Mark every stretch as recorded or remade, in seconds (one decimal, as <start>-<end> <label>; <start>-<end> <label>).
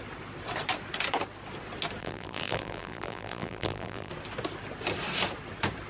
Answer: 0.0-2.0 recorded; 2.0-4.1 remade; 4.1-5.9 recorded